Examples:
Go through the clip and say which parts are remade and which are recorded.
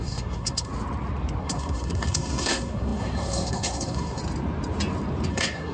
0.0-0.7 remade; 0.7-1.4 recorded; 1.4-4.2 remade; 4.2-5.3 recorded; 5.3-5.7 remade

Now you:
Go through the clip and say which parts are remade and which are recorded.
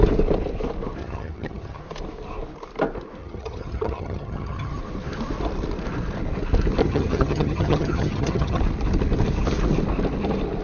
0.0-1.0 recorded; 1.0-1.8 remade; 1.8-3.2 recorded; 3.2-4.8 remade; 4.8-6.8 recorded; 6.8-8.6 remade; 8.6-10.6 recorded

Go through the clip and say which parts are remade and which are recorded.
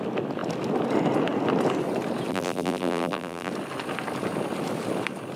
0.0-2.3 recorded; 2.3-3.5 remade; 3.5-5.4 recorded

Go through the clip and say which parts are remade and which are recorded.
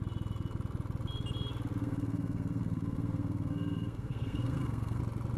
0.0-1.8 recorded; 1.8-5.0 remade; 5.0-5.4 recorded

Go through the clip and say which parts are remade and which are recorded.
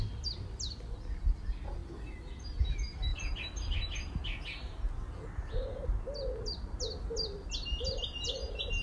0.0-8.8 recorded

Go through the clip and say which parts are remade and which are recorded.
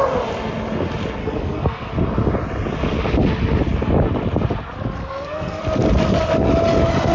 0.0-1.2 recorded; 1.2-1.9 remade; 1.9-5.0 recorded; 5.0-5.6 remade; 5.6-7.1 recorded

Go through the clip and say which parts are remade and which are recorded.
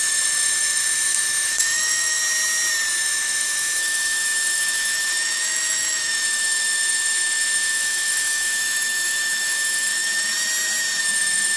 0.0-2.2 remade; 2.2-3.0 recorded; 3.0-10.3 remade; 10.3-11.0 recorded; 11.0-11.6 remade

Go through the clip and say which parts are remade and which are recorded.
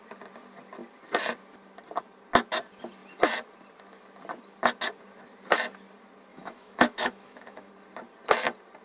0.0-6.3 recorded; 6.3-7.7 remade; 7.7-8.8 recorded